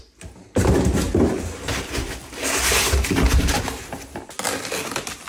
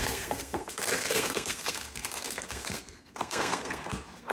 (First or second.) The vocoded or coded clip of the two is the second